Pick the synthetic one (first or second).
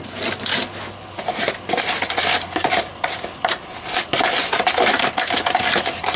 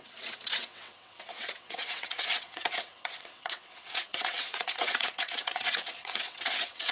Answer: second